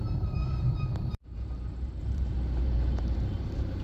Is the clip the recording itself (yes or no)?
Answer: no